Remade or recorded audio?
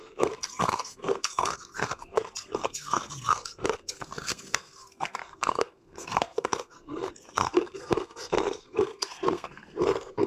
remade